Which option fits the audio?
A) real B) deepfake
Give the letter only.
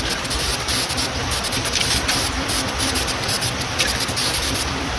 B